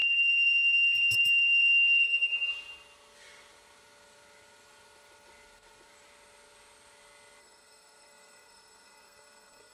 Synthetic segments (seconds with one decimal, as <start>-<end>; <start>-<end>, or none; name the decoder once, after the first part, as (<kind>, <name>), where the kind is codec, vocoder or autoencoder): 0.0-2.3 (codec, SNAC); 7.4-9.7